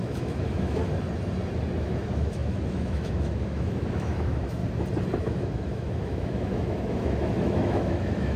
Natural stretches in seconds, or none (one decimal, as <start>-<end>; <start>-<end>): 0.8-1.8; 4.6-5.2

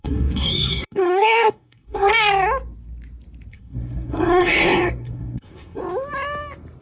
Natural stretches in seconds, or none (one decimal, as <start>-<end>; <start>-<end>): 2.1-3.5; 5.8-6.8

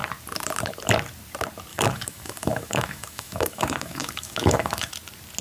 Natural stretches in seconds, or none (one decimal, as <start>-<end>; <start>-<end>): 0.0-1.7; 4.9-5.4

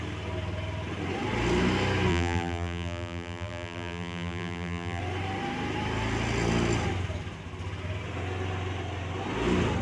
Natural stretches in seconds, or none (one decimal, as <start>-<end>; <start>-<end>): 0.0-2.1; 5.0-9.8

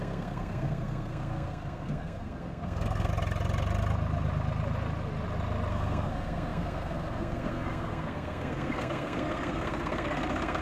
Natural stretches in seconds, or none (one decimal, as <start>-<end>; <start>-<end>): 3.1-5.7

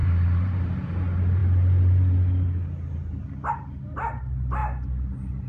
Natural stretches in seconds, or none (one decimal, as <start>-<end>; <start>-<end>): 0.9-5.5

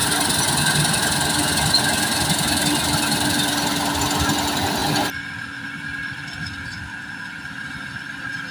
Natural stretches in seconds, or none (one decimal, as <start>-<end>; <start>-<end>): 0.0-8.5

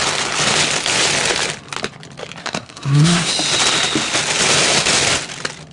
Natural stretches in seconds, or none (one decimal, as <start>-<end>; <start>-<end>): 0.0-2.4; 3.3-5.7